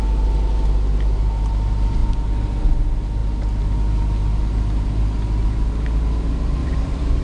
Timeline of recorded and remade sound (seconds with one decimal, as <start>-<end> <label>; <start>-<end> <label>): 0.0-6.6 recorded; 6.6-7.2 remade